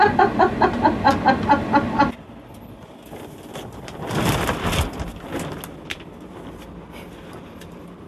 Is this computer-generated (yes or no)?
no